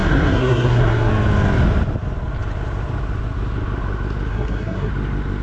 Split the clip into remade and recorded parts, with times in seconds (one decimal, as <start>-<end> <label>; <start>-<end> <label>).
0.0-1.1 remade; 1.1-4.3 recorded; 4.3-4.9 remade; 4.9-5.4 recorded